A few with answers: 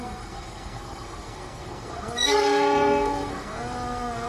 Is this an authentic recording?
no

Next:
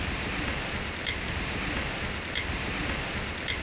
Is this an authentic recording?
yes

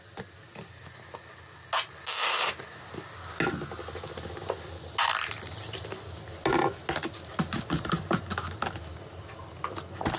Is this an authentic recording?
yes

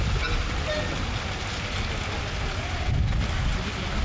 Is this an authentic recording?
yes